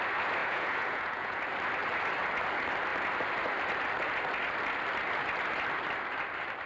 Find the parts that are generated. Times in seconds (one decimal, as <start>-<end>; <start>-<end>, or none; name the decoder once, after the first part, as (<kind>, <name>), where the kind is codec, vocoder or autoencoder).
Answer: 0.4-1.4 (vocoder, Vocos)